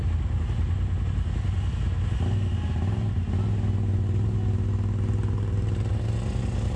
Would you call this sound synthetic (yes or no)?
no